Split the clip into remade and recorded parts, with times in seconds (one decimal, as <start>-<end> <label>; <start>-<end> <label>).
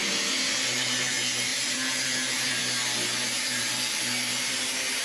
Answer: 0.0-0.5 recorded; 0.5-5.0 remade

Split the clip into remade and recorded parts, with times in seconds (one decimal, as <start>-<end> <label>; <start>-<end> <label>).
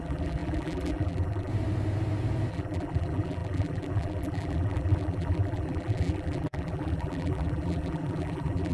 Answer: 0.0-1.5 remade; 1.5-2.5 recorded; 2.5-8.7 remade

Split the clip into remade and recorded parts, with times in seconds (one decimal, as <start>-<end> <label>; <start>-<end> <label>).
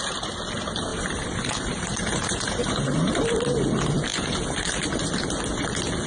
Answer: 0.0-0.9 recorded; 0.9-3.2 remade; 3.2-4.1 recorded; 4.1-5.1 remade; 5.1-6.1 recorded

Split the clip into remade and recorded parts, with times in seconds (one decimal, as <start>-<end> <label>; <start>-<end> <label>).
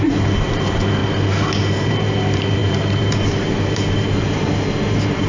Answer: 0.0-1.0 remade; 1.0-1.9 recorded; 1.9-5.3 remade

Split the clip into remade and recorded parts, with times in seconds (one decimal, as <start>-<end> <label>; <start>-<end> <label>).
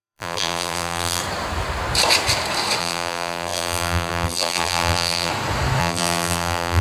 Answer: 0.0-1.2 remade; 1.2-2.8 recorded; 2.8-5.3 remade; 5.3-5.8 recorded; 5.8-6.8 remade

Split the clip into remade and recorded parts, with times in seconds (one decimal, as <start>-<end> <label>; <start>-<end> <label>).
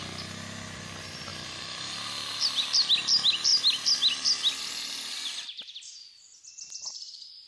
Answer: 0.0-1.3 recorded; 1.3-2.6 remade; 2.6-6.5 recorded; 6.5-7.5 remade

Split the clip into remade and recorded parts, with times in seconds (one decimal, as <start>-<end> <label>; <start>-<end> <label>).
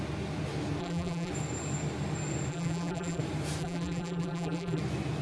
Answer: 0.0-0.8 recorded; 0.8-1.3 remade; 1.3-2.5 recorded; 2.5-3.2 remade; 3.2-3.6 recorded; 3.6-4.8 remade; 4.8-5.2 recorded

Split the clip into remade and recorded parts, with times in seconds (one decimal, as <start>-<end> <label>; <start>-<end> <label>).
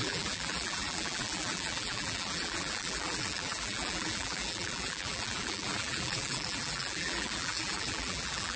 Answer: 0.0-8.6 remade